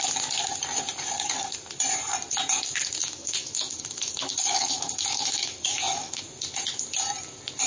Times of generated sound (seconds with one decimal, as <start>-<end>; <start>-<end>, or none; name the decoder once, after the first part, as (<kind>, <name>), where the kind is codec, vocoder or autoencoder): 3.0-6.2 (autoencoder, DAC-VAE)